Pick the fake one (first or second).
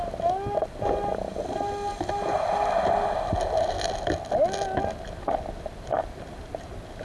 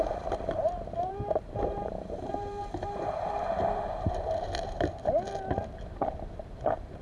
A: second